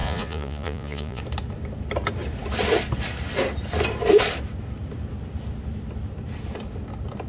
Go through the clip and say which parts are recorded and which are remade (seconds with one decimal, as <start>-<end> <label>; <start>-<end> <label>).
0.0-1.2 remade; 1.2-7.3 recorded